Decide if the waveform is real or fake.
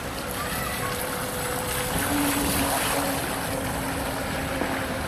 real